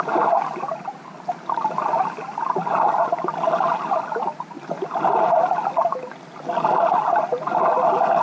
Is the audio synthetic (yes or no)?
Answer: no